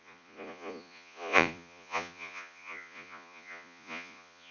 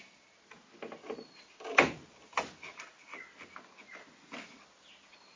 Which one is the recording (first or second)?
second